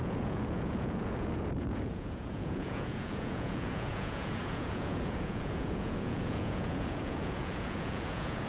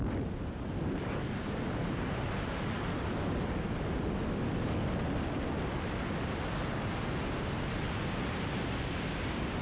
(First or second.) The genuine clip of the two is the second